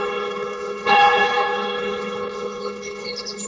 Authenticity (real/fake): fake